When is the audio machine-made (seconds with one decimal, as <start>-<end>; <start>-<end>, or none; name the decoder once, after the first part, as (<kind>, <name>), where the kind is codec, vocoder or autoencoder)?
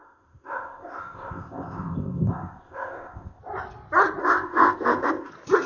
0.0-3.4 (codec, ZipCodec); 4.2-5.3